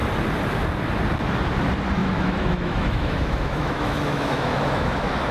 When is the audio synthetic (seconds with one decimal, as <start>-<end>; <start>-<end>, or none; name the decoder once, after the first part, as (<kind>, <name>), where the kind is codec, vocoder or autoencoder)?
2.0-5.3 (autoencoder, DAC-VAE)